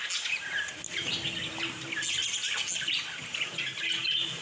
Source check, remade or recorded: recorded